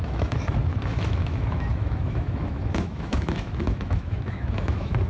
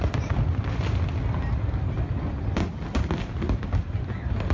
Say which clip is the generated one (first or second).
first